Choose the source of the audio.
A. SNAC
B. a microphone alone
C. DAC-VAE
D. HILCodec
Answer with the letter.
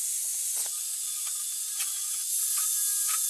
B